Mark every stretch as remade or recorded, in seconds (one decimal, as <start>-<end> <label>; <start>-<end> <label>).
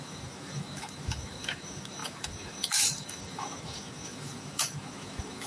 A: 0.0-5.5 remade